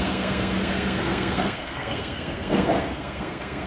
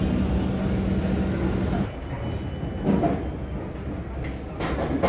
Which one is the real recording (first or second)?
second